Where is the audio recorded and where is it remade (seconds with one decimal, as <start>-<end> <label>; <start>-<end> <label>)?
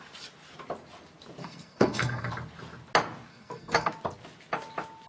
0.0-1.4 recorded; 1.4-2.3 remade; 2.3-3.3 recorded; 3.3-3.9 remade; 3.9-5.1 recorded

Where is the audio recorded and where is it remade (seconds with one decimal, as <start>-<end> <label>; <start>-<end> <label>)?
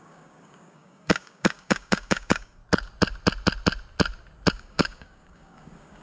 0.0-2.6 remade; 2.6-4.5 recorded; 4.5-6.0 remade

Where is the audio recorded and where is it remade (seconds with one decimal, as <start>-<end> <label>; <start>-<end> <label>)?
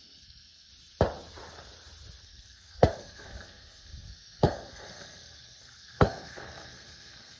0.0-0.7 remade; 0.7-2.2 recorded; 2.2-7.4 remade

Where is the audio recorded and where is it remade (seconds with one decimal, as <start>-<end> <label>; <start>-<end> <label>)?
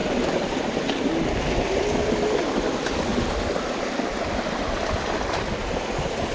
0.0-6.3 recorded